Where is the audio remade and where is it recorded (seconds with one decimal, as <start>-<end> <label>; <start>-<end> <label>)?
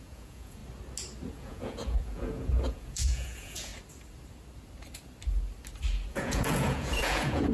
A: 0.0-0.6 remade; 0.6-1.3 recorded; 1.3-3.7 remade; 3.7-6.1 recorded; 6.1-7.5 remade